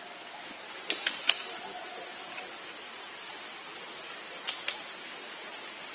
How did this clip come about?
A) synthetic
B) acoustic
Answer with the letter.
B